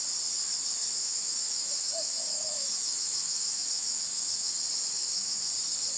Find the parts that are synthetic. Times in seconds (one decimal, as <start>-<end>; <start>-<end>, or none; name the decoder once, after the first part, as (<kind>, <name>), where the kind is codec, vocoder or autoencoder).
1.0-4.6 (autoencoder, DAC-VAE); 5.0-5.5